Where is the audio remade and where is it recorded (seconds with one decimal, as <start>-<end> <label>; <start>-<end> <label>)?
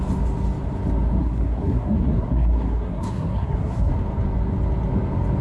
0.0-1.2 recorded; 1.2-3.9 remade; 3.9-5.4 recorded